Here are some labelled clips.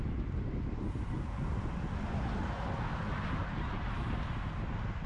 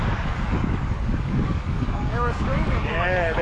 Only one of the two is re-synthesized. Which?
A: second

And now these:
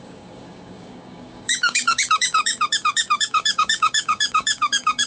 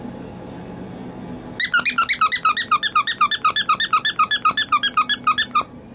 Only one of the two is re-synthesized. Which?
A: first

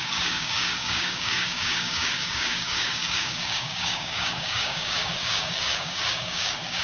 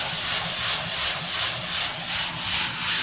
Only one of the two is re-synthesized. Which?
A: first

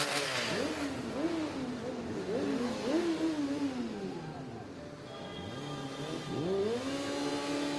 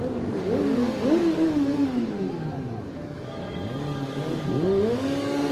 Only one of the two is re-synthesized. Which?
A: second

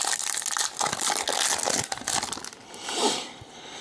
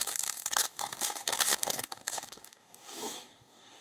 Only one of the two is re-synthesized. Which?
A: second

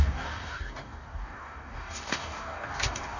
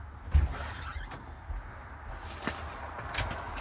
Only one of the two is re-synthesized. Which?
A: first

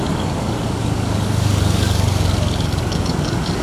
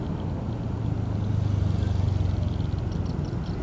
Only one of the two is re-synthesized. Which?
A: first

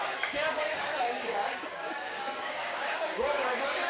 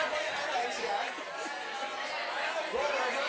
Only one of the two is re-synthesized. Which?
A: first